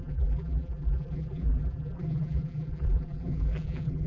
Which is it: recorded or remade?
remade